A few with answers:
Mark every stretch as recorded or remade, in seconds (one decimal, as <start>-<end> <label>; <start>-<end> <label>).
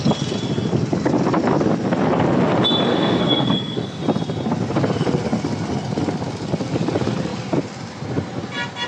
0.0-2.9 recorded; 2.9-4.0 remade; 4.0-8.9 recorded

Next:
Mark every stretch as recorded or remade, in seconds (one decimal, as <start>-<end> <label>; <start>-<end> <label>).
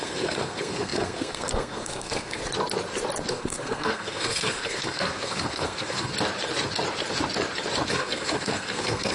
0.0-2.4 remade; 2.4-3.3 recorded; 3.3-6.1 remade; 6.1-7.9 recorded; 7.9-9.1 remade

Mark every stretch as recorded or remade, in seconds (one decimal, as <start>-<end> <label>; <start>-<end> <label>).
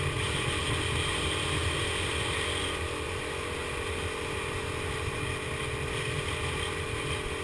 0.0-7.4 recorded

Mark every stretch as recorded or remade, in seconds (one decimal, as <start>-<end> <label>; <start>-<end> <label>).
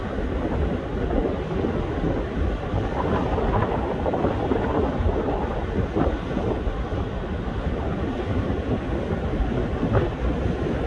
0.0-10.9 recorded